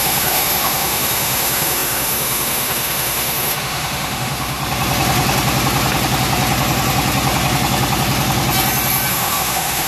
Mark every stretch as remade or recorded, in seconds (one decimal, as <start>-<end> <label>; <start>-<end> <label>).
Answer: 0.0-4.6 remade; 4.6-9.1 recorded; 9.1-9.9 remade